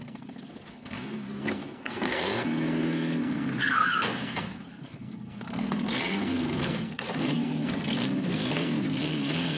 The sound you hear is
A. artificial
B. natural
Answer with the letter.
A